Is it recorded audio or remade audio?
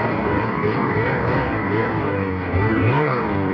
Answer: remade